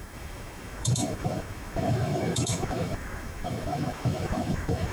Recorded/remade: remade